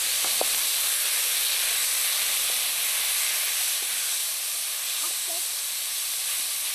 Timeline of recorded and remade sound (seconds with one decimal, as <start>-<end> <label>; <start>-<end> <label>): 0.0-6.7 recorded